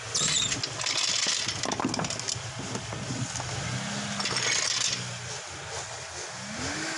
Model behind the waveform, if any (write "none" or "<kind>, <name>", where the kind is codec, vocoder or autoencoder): none